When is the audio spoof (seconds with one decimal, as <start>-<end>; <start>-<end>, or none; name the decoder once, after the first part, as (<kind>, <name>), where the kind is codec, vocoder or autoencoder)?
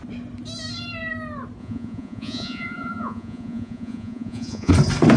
1.6-4.7 (vocoder, Vocos)